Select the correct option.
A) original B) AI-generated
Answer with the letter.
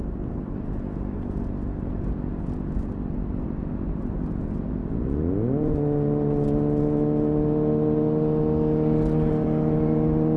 A